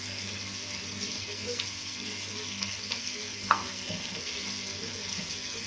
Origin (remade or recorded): remade